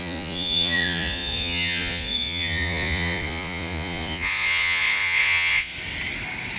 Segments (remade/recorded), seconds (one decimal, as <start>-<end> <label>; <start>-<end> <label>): 0.0-5.7 remade; 5.7-6.6 recorded